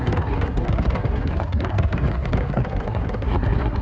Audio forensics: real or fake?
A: fake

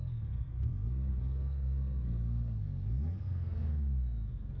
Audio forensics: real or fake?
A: fake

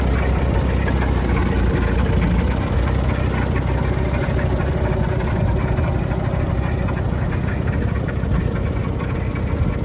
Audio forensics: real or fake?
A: real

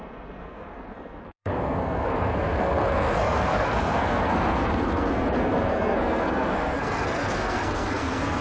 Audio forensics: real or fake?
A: fake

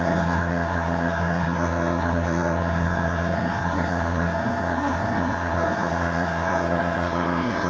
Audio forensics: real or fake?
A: fake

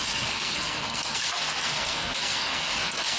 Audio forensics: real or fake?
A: fake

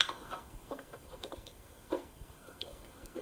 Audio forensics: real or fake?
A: fake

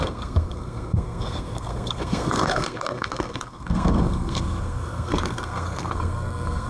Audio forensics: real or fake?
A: fake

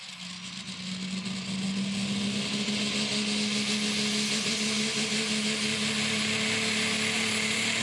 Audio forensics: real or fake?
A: real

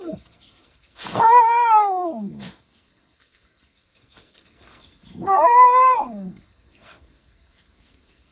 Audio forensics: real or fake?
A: fake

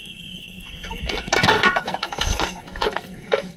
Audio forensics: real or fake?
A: fake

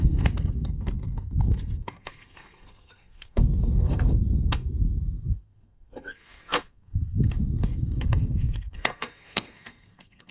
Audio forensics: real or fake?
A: fake